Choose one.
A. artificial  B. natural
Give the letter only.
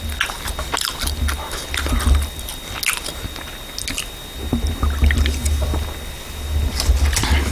B